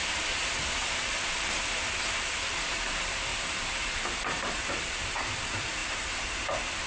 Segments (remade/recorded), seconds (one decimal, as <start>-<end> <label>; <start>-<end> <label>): 0.0-1.0 recorded; 1.0-6.9 remade